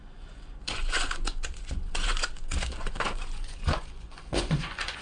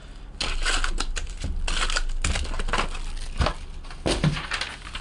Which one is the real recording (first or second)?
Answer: second